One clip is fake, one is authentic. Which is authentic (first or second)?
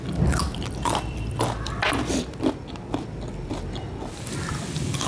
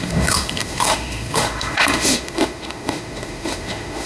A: first